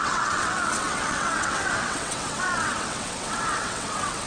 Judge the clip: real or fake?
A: fake